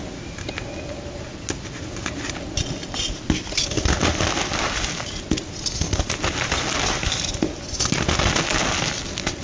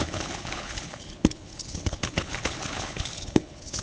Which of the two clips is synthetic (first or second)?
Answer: second